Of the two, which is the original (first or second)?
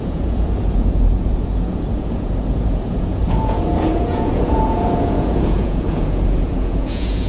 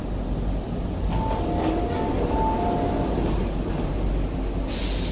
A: second